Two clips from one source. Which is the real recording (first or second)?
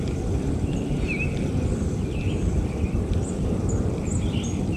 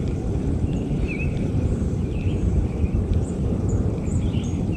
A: first